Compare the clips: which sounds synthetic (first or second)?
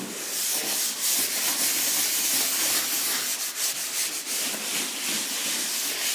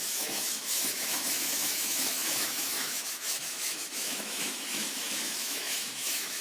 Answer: second